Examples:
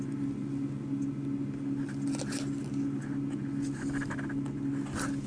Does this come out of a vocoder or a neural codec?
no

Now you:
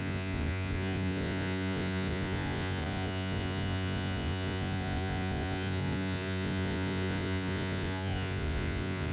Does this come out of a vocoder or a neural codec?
yes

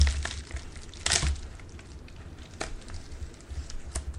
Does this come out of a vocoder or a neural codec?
no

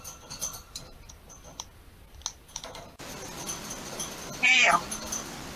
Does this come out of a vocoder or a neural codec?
no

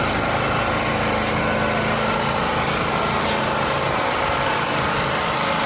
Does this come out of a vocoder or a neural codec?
no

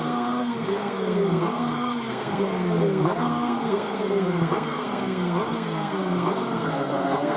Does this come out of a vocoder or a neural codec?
yes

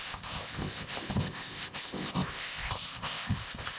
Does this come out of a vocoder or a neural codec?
yes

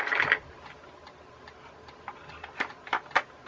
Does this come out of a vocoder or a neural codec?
no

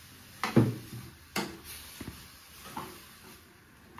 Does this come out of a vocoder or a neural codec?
no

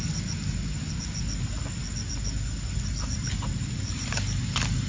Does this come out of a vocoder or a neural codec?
no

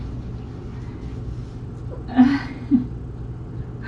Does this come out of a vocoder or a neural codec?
no